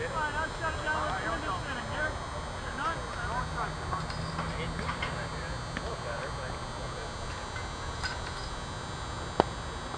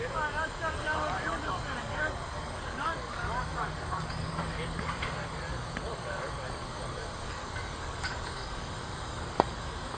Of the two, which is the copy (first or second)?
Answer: second